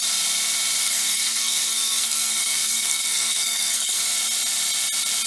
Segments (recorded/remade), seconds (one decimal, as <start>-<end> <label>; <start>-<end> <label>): 0.0-0.8 recorded; 0.8-4.0 remade; 4.0-5.3 recorded